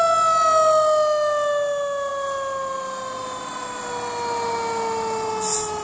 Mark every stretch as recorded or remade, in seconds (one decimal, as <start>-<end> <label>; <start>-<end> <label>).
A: 0.0-5.8 recorded